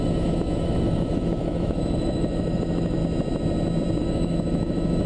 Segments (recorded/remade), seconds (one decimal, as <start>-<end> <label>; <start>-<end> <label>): 0.0-3.0 remade; 3.0-4.0 recorded; 4.0-5.1 remade